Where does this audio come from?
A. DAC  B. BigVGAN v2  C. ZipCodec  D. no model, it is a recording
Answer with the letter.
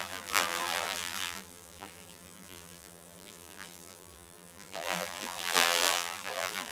B